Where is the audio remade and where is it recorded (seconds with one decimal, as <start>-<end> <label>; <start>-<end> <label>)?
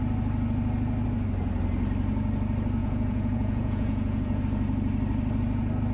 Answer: 0.0-2.8 recorded; 2.8-4.4 remade; 4.4-5.9 recorded